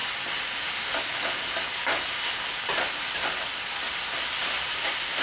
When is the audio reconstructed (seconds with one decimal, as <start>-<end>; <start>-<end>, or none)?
none